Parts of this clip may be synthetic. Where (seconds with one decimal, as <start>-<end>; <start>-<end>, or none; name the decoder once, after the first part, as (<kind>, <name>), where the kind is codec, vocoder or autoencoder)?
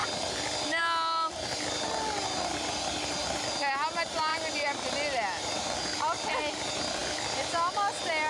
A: none